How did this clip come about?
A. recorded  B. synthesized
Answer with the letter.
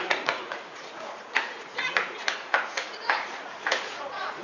B